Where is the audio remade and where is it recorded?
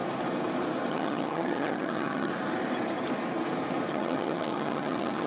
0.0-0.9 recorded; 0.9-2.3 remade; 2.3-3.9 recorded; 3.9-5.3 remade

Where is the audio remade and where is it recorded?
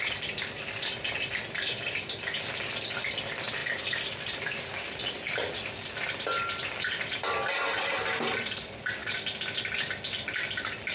0.0-10.9 recorded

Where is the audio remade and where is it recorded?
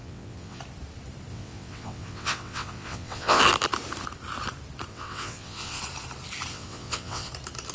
0.0-0.6 remade; 0.6-1.3 recorded; 1.3-3.4 remade; 3.4-4.9 recorded; 4.9-5.8 remade; 5.8-6.5 recorded; 6.5-7.3 remade; 7.3-7.7 recorded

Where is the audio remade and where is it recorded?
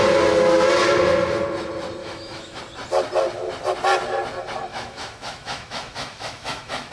0.0-2.0 recorded; 2.0-2.6 remade; 2.6-4.7 recorded; 4.7-6.9 remade